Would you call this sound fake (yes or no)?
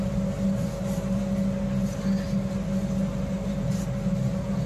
no